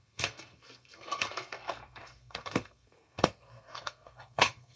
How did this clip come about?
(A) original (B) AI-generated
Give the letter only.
B